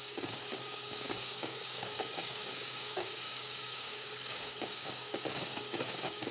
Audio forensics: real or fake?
fake